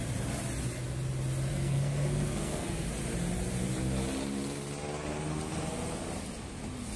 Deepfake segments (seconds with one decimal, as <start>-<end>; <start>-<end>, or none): 1.5-2.9